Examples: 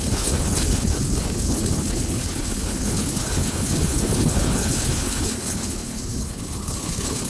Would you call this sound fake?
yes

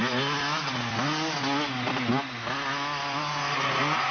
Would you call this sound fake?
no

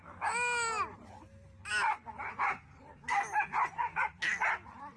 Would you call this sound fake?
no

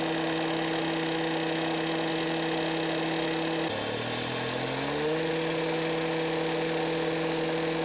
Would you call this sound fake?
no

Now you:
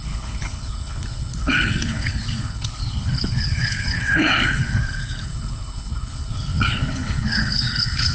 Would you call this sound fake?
yes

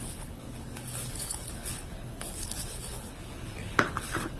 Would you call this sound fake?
yes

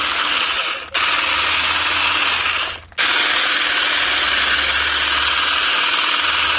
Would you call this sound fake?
no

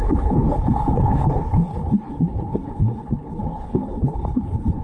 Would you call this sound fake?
yes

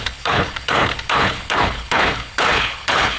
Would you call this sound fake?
yes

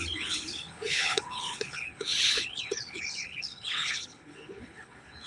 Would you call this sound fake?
yes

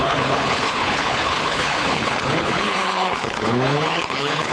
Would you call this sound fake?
yes